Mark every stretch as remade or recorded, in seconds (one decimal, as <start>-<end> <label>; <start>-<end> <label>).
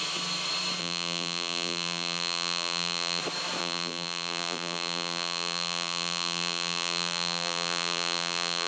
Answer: 0.0-0.8 recorded; 0.8-3.2 remade; 3.2-3.6 recorded; 3.6-8.7 remade